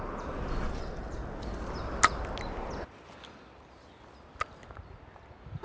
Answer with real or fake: real